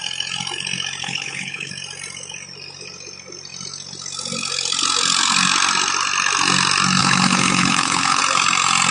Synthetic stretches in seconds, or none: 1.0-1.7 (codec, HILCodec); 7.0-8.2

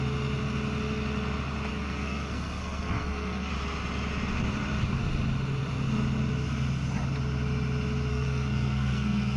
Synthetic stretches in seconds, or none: 1.7-3.5 (codec, SNAC); 8.1-9.4

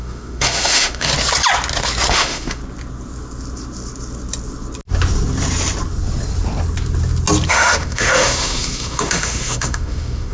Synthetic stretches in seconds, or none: 0.0-1.1 (autoencoder, DAC-VAE); 2.1-2.6; 7.5-10.3

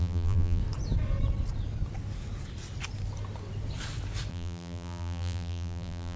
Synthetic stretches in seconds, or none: 0.0-0.6 (vocoder, BigVGAN v2); 4.3-6.2